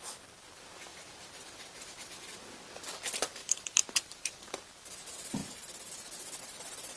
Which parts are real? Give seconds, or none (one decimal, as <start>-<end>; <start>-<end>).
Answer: 0.0-0.9; 2.1-3.4; 4.5-7.0